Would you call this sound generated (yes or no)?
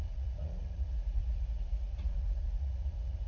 yes